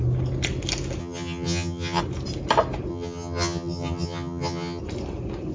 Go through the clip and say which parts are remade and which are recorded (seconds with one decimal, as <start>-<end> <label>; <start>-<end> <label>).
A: 0.0-1.0 recorded; 1.0-2.0 remade; 2.0-2.9 recorded; 2.9-4.8 remade; 4.8-5.5 recorded